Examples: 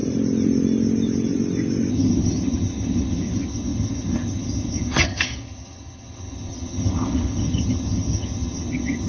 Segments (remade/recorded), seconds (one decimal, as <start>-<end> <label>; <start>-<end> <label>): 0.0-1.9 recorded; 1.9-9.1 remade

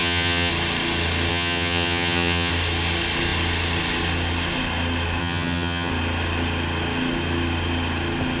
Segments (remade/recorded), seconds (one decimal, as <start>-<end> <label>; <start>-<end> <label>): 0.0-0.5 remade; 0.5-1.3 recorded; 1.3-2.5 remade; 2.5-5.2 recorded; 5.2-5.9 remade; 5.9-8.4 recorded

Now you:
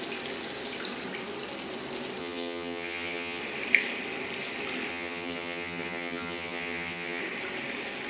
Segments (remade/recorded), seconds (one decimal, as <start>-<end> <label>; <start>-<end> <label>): 0.0-2.2 recorded; 2.2-3.4 remade; 3.4-4.9 recorded; 4.9-7.2 remade; 7.2-8.1 recorded